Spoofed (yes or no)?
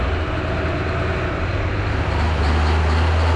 no